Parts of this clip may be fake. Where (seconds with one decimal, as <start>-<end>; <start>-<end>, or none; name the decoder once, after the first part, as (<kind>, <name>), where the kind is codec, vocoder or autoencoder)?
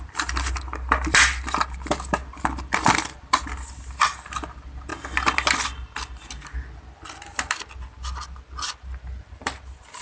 0.0-4.9 (vocoder, BigVGAN v2); 9.3-10.0